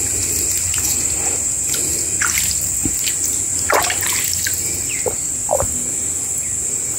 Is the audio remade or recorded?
recorded